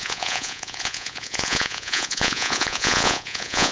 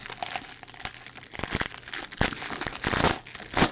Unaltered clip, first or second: second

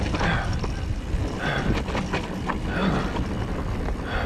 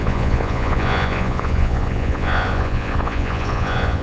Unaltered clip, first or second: first